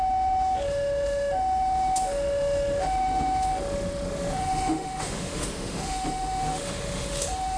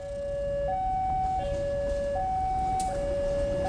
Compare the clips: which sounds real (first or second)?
second